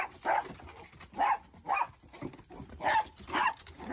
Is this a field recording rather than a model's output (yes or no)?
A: yes